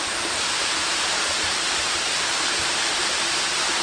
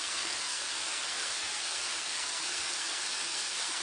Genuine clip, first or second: first